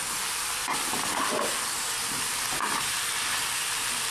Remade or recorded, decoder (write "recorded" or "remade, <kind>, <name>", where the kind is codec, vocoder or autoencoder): recorded